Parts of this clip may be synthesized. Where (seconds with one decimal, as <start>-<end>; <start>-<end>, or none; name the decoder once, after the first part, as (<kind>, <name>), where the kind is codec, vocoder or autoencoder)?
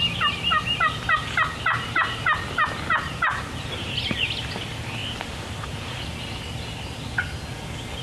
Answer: none